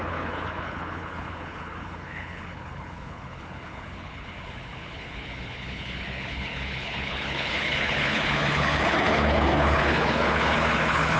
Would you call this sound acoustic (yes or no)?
no